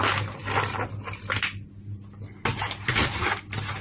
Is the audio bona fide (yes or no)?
yes